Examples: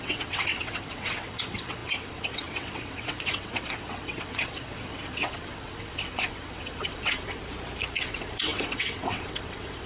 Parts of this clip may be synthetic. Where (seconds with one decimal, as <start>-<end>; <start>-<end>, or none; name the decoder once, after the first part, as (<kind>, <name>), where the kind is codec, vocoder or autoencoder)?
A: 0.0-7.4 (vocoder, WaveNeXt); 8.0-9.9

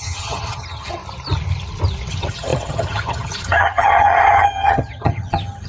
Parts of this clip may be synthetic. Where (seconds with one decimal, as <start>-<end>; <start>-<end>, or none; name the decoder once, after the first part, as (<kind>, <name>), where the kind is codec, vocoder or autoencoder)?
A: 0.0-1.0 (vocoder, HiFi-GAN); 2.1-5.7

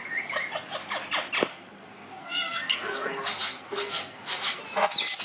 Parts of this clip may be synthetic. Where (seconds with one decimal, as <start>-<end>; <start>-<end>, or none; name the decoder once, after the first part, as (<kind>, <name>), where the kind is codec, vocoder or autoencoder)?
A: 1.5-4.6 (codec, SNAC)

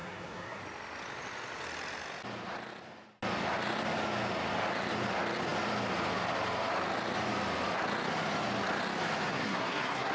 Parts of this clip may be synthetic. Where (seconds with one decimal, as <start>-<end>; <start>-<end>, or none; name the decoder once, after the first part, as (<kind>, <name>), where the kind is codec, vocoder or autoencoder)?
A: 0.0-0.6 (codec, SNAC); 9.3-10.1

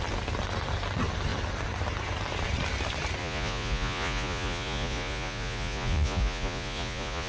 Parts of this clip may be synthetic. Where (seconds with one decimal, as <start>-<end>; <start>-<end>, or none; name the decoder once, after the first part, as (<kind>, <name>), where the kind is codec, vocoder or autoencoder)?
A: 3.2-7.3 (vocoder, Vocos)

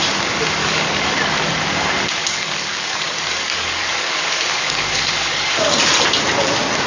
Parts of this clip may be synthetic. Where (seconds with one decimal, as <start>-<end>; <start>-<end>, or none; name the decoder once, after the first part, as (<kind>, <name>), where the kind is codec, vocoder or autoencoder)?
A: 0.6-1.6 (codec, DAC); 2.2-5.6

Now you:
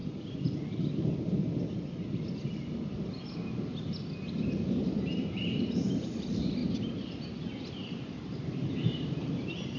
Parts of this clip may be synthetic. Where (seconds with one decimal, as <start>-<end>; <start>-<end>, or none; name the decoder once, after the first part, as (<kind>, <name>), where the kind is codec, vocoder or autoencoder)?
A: 4.5-6.6 (vocoder, BigVGAN v2); 7.7-9.8

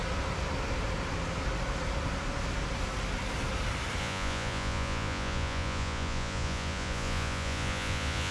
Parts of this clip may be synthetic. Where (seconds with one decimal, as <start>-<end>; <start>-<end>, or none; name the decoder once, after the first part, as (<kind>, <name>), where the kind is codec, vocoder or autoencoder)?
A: 4.0-8.3 (vocoder, Vocos)